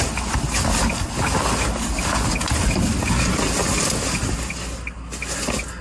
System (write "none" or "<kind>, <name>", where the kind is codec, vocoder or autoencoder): none